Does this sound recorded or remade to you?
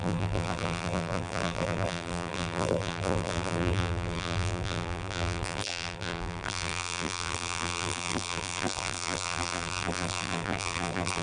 remade